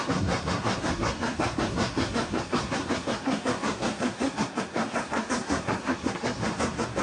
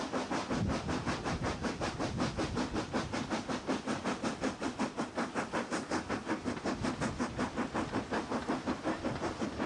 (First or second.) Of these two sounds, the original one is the second